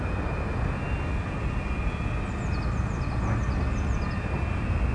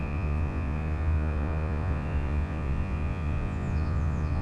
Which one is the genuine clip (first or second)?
first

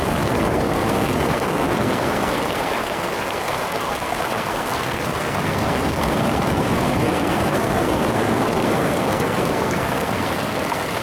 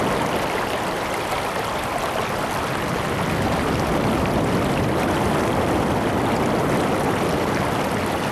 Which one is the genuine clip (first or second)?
second